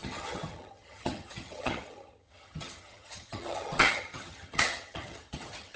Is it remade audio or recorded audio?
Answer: remade